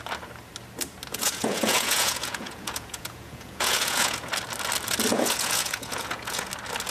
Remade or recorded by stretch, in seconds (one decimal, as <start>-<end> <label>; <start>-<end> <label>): 0.0-1.1 recorded; 1.1-4.3 remade; 4.3-5.1 recorded; 5.1-6.5 remade; 6.5-6.9 recorded